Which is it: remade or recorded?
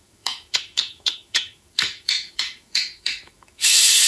remade